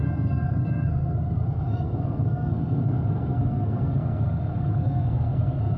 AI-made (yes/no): yes